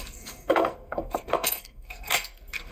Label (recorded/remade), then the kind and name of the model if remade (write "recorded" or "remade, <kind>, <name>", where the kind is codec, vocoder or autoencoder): remade, codec, SNAC